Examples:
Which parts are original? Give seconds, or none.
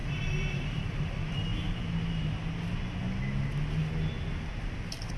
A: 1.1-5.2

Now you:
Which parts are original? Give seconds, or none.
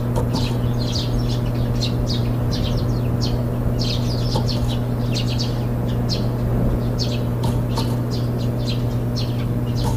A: 0.0-2.2; 2.8-10.0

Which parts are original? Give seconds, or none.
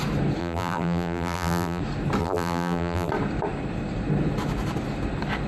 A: 0.0-0.4; 1.8-2.2; 3.1-5.5